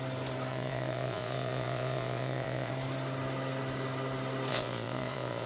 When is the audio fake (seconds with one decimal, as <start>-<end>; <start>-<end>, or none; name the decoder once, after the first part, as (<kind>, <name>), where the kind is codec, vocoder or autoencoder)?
0.5-2.7 (vocoder, Vocos); 4.5-5.5